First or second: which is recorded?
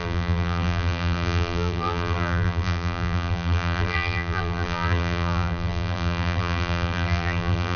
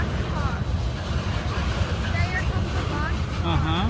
second